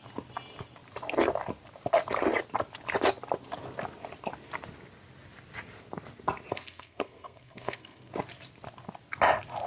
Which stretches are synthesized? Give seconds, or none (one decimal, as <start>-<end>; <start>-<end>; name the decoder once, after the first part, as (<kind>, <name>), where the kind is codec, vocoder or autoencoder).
6.5-8.1 (codec, SNAC)